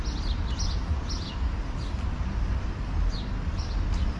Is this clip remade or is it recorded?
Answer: recorded